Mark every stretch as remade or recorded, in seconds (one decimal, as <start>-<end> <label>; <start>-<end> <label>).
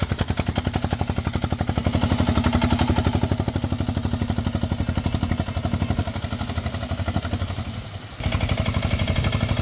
0.0-9.6 recorded